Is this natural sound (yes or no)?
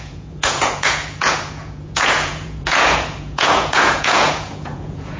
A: no